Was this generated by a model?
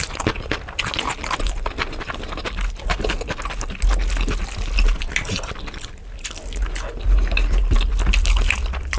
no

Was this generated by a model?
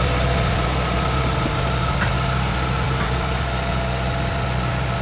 no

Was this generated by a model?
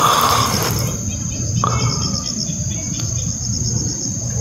no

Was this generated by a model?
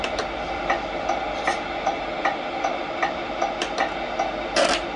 no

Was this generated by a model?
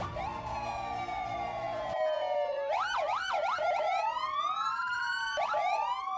no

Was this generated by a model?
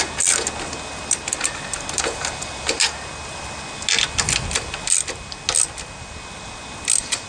no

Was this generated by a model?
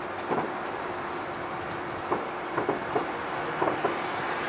no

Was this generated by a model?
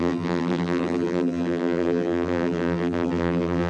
yes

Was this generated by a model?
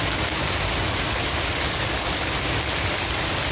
no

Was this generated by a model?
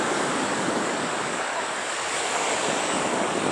yes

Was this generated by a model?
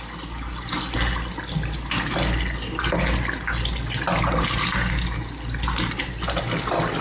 no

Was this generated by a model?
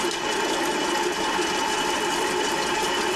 yes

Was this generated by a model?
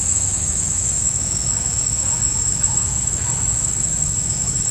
yes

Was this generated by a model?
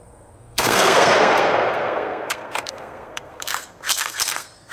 yes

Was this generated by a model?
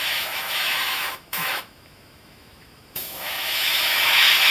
yes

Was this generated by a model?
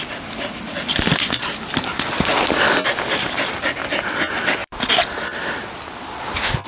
no